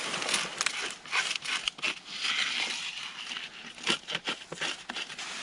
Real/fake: real